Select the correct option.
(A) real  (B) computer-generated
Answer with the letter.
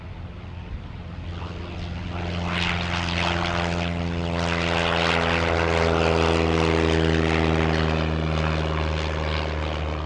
A